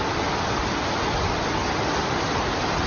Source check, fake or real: real